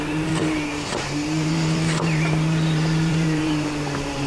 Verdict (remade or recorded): remade